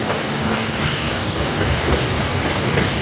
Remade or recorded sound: remade